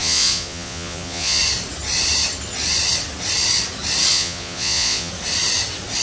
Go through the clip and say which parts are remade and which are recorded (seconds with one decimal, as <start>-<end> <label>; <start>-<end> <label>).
0.0-1.4 remade; 1.4-4.1 recorded; 4.1-5.1 remade; 5.1-6.0 recorded